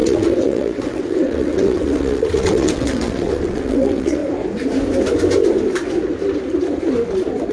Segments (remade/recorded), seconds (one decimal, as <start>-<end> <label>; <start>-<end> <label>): 0.0-4.2 remade; 4.2-7.5 recorded